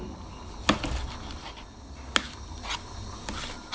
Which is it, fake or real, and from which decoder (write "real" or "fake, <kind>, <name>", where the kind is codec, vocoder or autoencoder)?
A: real